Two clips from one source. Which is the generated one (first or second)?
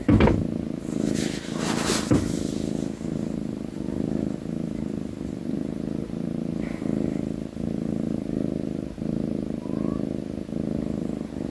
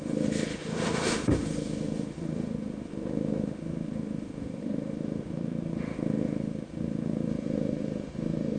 second